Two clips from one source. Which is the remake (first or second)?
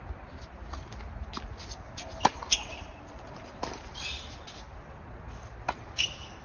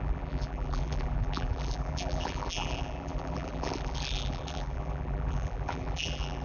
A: second